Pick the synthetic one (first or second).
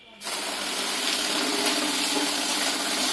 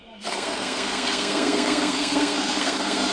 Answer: second